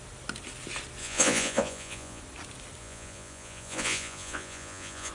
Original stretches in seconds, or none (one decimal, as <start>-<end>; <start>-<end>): 0.0-1.0; 2.2-2.8